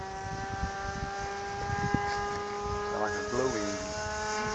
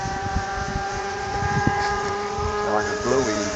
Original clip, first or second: first